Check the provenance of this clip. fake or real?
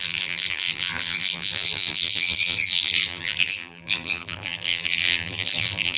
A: fake